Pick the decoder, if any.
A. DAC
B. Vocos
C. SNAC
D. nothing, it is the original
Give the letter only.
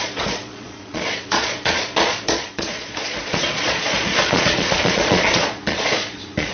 B